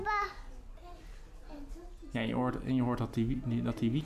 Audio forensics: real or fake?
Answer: real